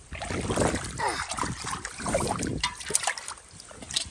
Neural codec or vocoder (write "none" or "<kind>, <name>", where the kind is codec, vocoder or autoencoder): vocoder, BigVGAN v2